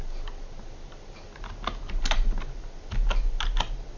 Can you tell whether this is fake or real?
real